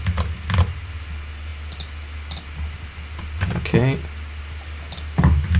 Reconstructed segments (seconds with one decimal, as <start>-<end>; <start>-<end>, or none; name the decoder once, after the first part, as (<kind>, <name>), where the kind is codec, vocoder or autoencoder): none